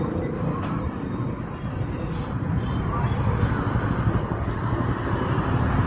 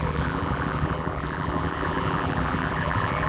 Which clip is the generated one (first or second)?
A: second